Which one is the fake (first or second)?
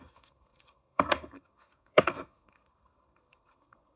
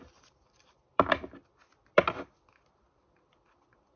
first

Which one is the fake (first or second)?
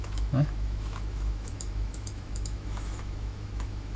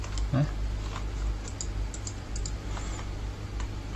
first